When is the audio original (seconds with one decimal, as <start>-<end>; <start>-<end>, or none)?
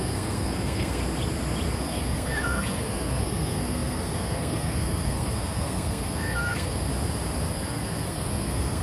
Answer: 1.0-1.8; 6.9-7.5